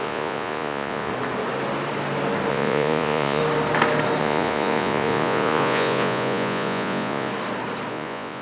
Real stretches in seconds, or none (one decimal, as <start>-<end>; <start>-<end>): 1.1-2.5; 3.4-4.2; 7.3-7.9